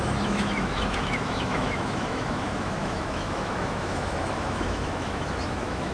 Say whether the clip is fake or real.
fake